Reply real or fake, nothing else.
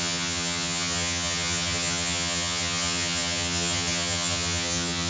fake